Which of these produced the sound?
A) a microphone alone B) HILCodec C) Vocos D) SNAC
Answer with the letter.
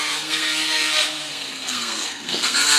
D